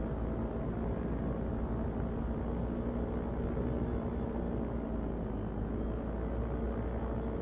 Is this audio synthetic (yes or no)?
no